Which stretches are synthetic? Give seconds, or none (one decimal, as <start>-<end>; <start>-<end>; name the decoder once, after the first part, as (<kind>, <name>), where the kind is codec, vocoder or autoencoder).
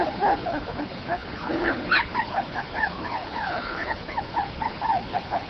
0.0-5.5 (codec, HILCodec)